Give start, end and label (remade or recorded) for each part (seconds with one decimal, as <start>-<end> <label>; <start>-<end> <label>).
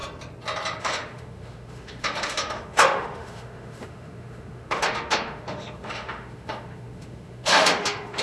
0.0-0.8 recorded; 0.8-8.2 remade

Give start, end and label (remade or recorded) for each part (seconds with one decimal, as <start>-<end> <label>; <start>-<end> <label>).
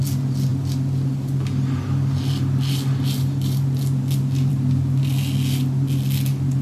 0.0-6.6 recorded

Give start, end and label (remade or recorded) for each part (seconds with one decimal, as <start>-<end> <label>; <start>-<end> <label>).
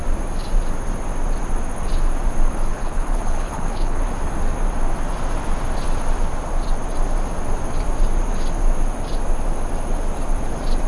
0.0-2.7 recorded; 2.7-4.0 remade; 4.0-10.9 recorded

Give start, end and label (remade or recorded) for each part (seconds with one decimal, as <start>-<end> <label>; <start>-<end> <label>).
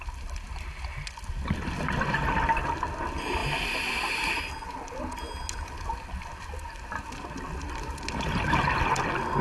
0.0-9.4 recorded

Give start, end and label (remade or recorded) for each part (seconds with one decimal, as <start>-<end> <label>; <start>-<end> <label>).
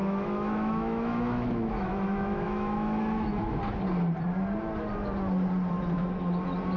0.0-3.6 remade; 3.6-6.8 recorded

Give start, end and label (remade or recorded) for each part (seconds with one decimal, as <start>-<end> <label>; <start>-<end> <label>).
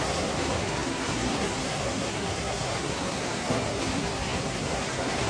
0.0-5.3 remade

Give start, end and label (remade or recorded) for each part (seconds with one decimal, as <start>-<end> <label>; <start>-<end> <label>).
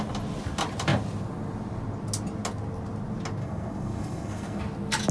0.0-3.4 recorded; 3.4-4.6 remade; 4.6-5.1 recorded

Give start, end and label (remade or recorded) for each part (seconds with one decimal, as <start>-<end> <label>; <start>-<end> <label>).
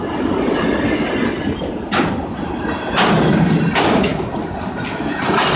0.0-5.6 recorded